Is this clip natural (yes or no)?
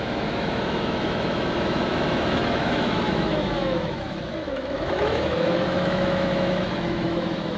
no